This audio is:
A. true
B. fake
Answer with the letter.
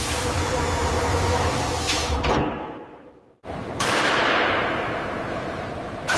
B